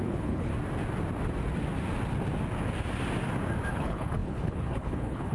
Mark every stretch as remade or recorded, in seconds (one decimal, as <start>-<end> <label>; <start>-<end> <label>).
0.0-0.5 remade; 0.5-3.7 recorded; 3.7-5.3 remade